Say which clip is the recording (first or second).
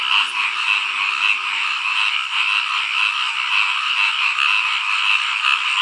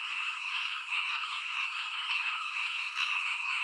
first